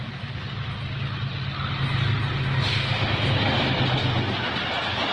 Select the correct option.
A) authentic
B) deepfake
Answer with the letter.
A